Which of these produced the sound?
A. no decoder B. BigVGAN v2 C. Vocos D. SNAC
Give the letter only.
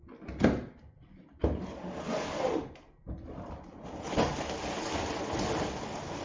A